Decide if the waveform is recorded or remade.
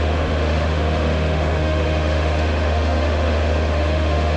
remade